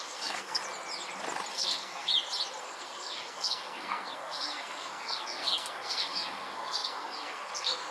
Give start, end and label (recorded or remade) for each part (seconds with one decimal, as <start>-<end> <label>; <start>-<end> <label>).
0.0-0.6 remade; 0.6-1.5 recorded; 1.5-2.1 remade; 2.1-2.6 recorded; 2.6-7.9 remade